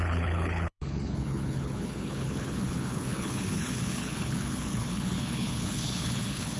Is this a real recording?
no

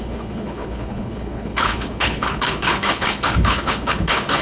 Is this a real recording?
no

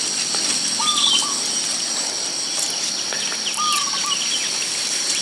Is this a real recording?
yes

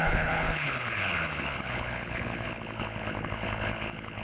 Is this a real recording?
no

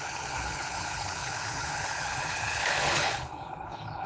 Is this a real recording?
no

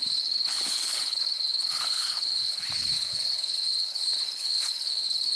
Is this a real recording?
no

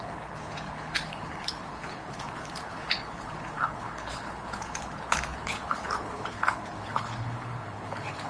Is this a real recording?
no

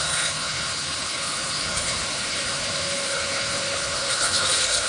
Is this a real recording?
no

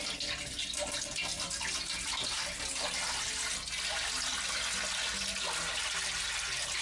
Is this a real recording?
yes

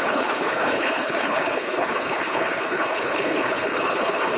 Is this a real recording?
no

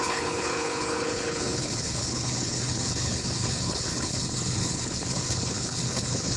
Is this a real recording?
no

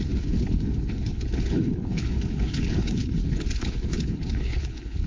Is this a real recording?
no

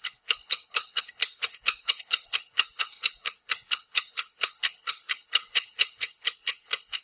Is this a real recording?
no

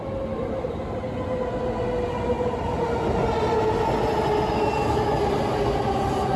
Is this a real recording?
yes